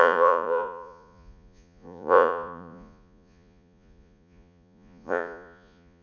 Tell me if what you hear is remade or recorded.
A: remade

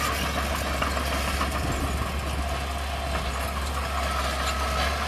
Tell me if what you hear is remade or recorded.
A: recorded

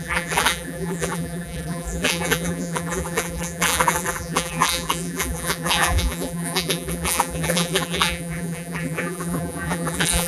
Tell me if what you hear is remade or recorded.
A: remade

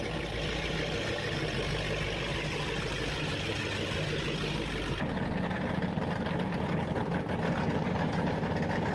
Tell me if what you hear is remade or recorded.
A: recorded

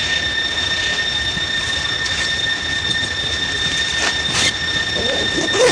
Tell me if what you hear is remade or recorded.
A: recorded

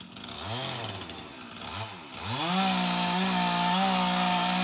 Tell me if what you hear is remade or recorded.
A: recorded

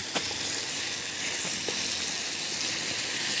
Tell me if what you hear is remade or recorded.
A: recorded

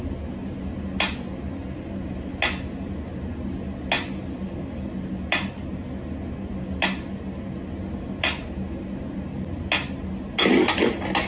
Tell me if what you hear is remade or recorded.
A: recorded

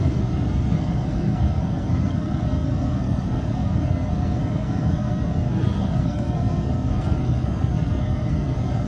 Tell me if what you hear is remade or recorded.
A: remade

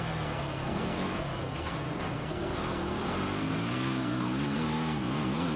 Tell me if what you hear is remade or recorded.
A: remade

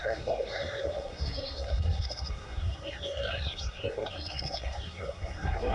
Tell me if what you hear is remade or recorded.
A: remade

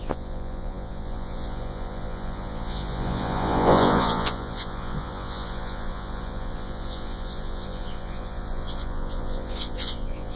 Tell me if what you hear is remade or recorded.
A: remade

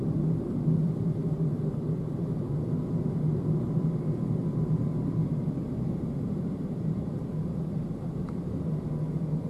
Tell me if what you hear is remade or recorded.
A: remade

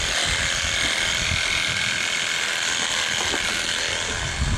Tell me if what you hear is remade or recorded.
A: recorded